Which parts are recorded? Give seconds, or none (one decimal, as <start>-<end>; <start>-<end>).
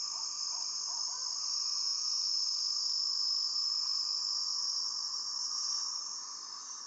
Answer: 0.0-6.9